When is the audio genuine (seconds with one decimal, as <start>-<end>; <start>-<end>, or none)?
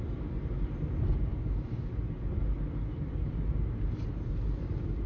0.0-5.1